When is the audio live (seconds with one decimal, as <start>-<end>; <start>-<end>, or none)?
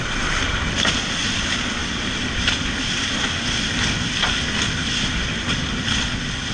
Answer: 0.0-6.5